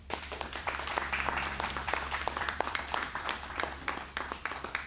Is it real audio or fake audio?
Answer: fake